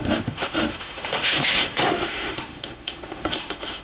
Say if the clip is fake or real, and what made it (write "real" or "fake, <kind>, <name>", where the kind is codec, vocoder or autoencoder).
fake, autoencoder, DAC-VAE